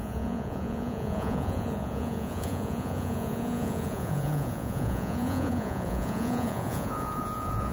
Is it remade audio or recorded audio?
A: remade